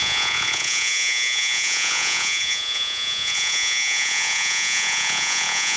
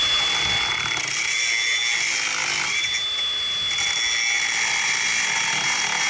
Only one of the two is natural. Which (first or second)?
second